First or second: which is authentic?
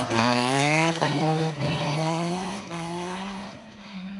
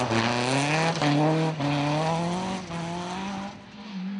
second